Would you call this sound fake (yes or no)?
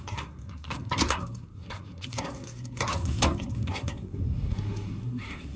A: yes